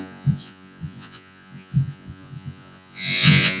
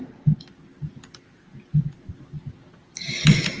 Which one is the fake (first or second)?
first